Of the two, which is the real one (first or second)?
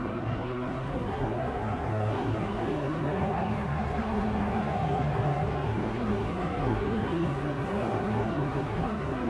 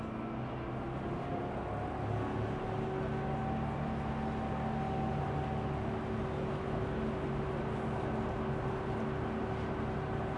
second